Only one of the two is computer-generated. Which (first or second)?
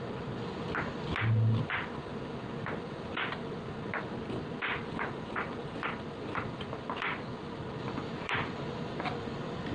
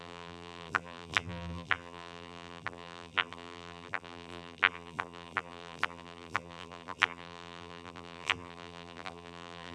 second